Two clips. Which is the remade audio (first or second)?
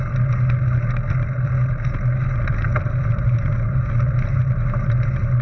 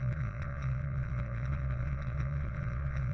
second